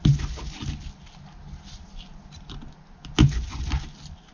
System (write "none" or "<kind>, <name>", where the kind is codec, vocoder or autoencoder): none